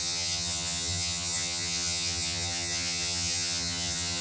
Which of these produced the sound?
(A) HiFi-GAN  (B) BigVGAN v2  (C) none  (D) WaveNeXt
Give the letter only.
A